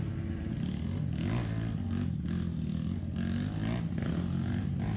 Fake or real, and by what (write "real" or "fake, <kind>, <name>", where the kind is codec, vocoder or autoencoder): real